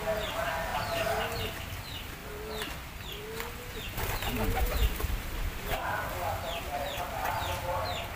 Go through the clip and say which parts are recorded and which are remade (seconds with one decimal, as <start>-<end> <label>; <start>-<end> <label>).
0.0-8.2 recorded